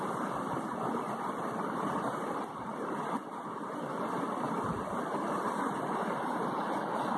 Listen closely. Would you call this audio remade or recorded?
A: recorded